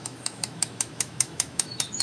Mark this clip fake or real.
fake